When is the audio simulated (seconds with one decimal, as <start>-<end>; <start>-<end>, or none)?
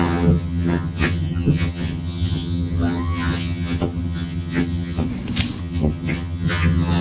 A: 0.0-5.1; 5.6-7.0